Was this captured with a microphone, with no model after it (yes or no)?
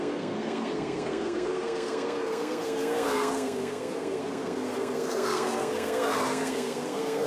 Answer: no